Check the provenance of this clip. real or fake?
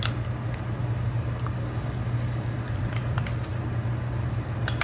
real